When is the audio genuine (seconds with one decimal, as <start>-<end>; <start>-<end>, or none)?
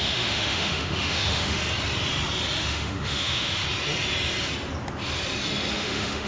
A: 1.6-2.6; 3.6-5.7